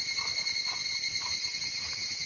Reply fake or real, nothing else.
real